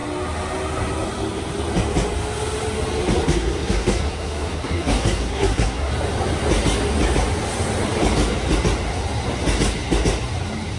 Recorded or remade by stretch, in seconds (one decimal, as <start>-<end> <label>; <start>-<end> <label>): 0.0-3.2 recorded; 3.2-5.9 remade; 5.9-10.8 recorded

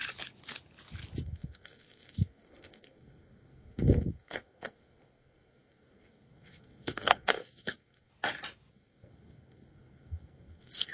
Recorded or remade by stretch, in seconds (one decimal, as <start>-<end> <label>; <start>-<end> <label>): 0.0-1.2 recorded; 1.2-8.1 remade; 8.1-8.7 recorded; 8.7-10.9 remade

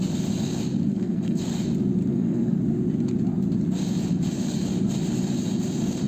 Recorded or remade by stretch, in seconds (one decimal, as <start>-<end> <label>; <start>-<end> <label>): 0.0-0.9 recorded; 0.9-1.4 remade; 1.4-2.1 recorded; 2.1-2.6 remade; 2.6-6.1 recorded